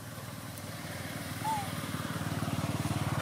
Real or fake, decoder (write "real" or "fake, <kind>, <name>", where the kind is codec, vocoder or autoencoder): fake, vocoder, BigVGAN v2